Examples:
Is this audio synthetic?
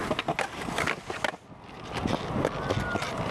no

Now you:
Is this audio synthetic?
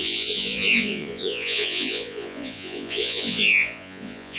yes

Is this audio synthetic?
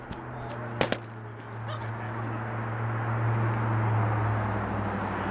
no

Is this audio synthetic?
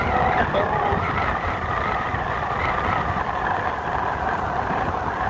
no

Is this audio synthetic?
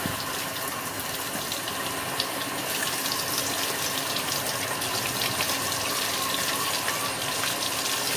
no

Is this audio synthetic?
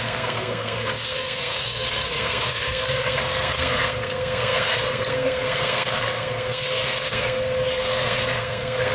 yes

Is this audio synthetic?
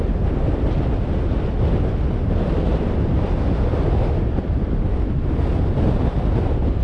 no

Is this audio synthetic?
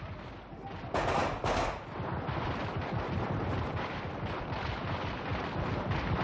no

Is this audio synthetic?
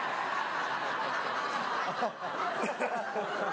no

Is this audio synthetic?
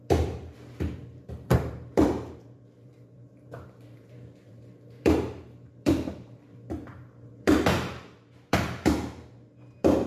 yes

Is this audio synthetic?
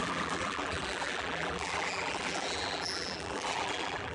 yes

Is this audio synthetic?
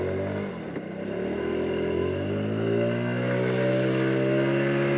no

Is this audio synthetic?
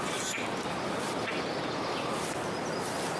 no